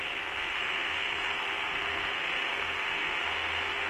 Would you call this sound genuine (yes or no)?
no